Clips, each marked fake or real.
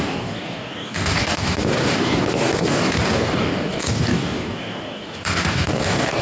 fake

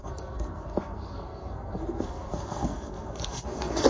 fake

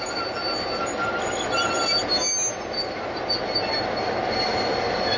real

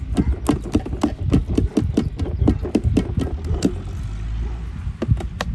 real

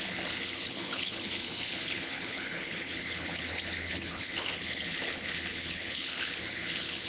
fake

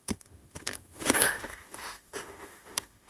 fake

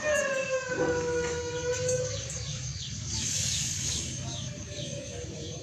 fake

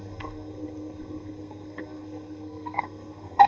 fake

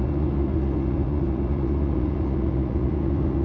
fake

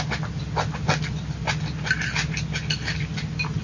real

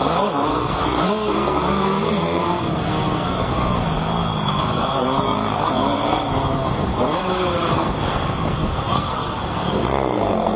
fake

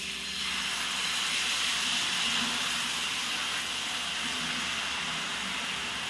real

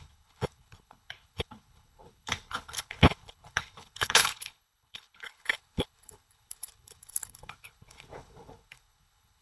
fake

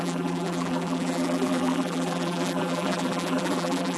fake